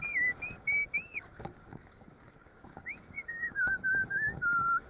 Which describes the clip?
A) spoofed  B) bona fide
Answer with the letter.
A